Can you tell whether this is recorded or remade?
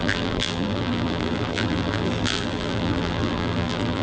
remade